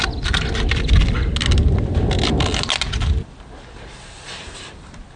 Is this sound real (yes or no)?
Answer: yes